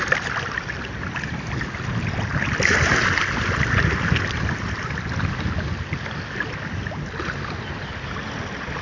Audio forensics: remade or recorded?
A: recorded